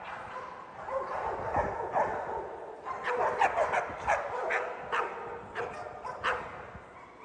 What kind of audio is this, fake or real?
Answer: real